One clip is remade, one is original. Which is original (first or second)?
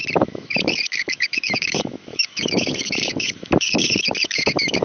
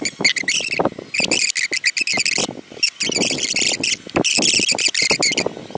second